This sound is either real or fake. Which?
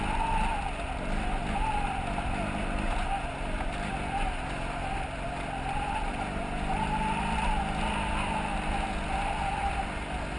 real